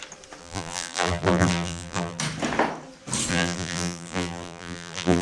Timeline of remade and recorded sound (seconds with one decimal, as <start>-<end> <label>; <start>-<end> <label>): 0.0-0.4 recorded; 0.4-2.2 remade; 2.2-3.3 recorded; 3.3-5.2 remade